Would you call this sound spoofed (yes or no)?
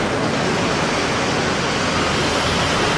no